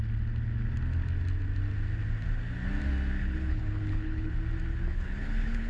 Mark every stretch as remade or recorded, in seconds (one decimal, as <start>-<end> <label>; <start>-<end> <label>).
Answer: 0.0-3.2 recorded; 3.2-4.3 remade; 4.3-4.7 recorded; 4.7-5.7 remade